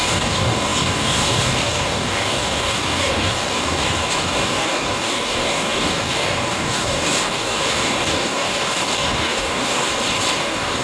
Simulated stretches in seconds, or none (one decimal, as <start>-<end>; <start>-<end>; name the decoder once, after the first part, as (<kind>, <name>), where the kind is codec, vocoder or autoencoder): 0.0-9.9 (codec, DAC); 10.4-10.8